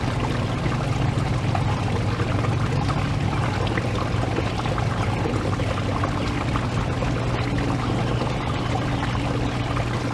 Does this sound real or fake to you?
real